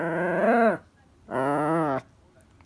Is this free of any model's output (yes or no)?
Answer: yes